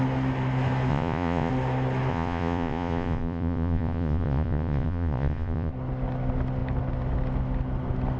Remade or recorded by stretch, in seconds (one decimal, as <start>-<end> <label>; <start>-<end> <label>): 0.0-0.9 recorded; 0.9-1.5 remade; 1.5-2.1 recorded; 2.1-5.7 remade; 5.7-8.2 recorded